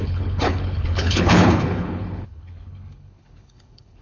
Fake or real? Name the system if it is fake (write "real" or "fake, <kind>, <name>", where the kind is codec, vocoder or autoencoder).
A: fake, codec, HILCodec